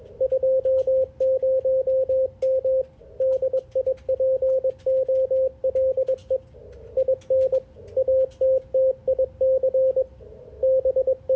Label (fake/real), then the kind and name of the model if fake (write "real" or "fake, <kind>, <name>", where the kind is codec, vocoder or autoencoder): real